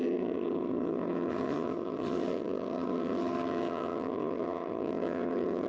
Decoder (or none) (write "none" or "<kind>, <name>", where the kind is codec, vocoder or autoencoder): vocoder, HiFi-GAN